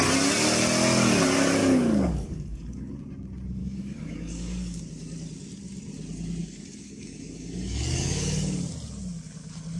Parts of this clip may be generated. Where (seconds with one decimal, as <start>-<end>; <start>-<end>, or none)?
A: 1.6-3.0; 3.6-4.8; 6.4-8.7